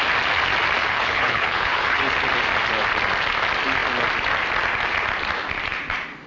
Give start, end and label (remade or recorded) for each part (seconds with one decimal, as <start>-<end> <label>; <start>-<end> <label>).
0.0-0.8 recorded; 0.8-2.0 remade; 2.0-6.3 recorded